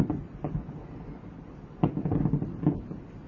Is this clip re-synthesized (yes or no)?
no